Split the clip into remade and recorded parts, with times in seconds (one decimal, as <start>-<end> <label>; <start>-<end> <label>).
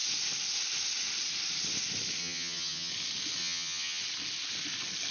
0.0-2.2 recorded; 2.2-2.9 remade; 2.9-3.4 recorded; 3.4-4.0 remade; 4.0-5.1 recorded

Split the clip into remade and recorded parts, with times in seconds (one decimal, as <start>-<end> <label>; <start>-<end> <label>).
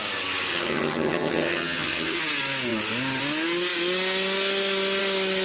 0.0-0.5 recorded; 0.5-2.2 remade; 2.2-5.4 recorded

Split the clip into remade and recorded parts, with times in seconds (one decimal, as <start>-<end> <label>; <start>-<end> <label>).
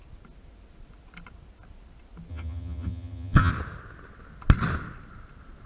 0.0-2.3 recorded; 2.3-3.5 remade; 3.5-5.7 recorded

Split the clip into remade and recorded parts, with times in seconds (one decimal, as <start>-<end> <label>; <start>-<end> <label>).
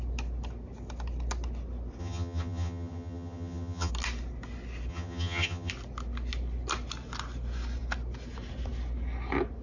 0.0-2.0 recorded; 2.0-3.9 remade; 3.9-4.9 recorded; 4.9-5.7 remade; 5.7-9.6 recorded